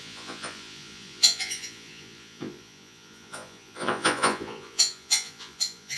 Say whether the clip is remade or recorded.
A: remade